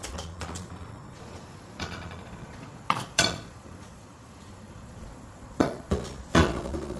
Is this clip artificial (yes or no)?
yes